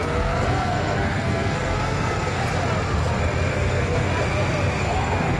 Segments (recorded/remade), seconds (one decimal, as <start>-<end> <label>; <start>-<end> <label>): 0.0-2.4 remade; 2.4-3.5 recorded; 3.5-4.1 remade; 4.1-4.8 recorded; 4.8-5.4 remade